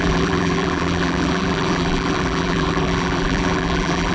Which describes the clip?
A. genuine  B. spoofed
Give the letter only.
B